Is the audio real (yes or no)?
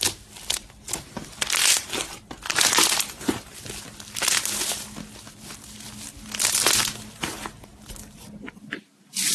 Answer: yes